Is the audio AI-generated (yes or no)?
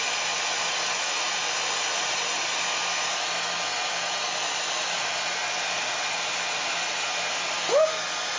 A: no